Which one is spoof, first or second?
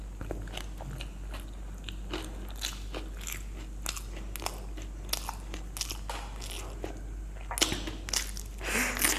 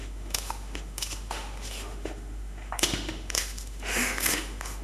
second